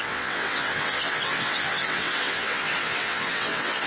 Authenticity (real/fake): fake